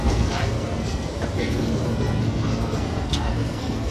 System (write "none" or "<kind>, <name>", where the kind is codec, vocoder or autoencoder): codec, SNAC